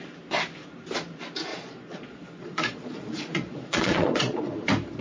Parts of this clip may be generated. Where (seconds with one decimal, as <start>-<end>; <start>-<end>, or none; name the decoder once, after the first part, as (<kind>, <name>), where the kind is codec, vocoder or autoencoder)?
1.5-4.5 (vocoder, Vocos)